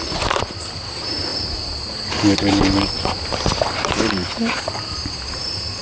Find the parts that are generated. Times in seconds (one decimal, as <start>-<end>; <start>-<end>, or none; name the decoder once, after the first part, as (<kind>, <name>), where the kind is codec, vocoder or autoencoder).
0.0-1.3 (vocoder, BigVGAN v2); 2.5-5.8